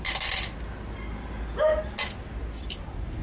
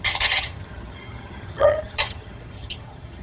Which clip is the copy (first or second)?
second